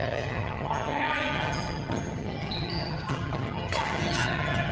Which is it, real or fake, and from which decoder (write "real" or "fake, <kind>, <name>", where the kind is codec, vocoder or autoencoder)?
fake, vocoder, HiFi-GAN